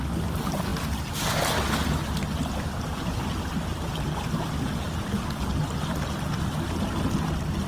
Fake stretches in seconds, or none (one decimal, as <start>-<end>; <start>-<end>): none